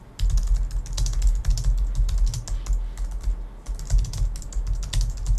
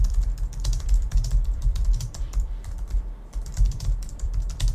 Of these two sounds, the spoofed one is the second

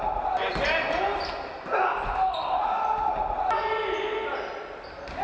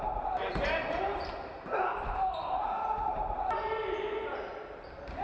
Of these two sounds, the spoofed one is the second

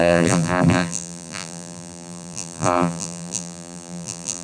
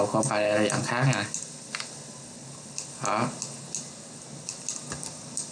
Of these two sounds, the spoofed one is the first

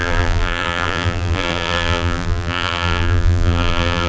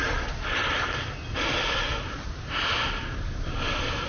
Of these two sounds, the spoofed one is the first